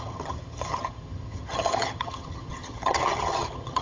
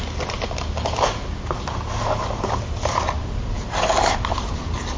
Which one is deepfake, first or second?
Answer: first